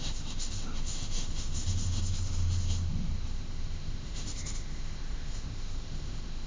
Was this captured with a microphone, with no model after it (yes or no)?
no